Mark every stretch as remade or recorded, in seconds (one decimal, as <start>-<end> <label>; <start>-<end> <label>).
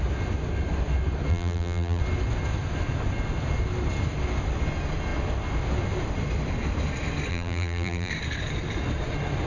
0.0-1.3 recorded; 1.3-2.0 remade; 2.0-7.3 recorded; 7.3-8.1 remade; 8.1-9.5 recorded